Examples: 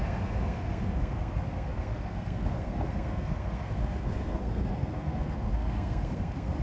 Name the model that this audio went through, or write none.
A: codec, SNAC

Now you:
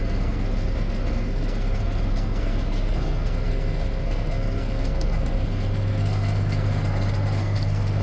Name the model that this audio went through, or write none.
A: codec, SNAC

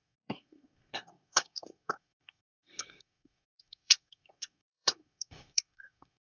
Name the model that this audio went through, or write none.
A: codec, SNAC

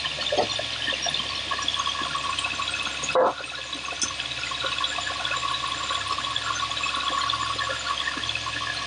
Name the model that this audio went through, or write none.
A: none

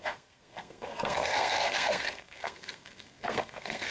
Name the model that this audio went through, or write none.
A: codec, SNAC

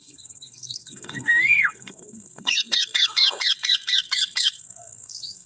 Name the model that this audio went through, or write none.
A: codec, SNAC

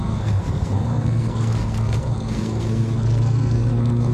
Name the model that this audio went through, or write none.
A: codec, SNAC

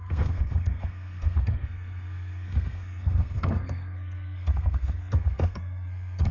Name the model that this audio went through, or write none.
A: codec, SNAC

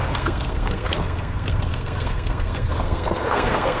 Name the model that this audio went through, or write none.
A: codec, SNAC